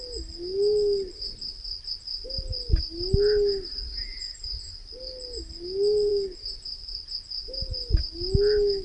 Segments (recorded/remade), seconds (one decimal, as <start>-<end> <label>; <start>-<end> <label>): 0.0-8.8 recorded